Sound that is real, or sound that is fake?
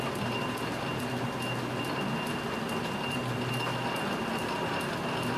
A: real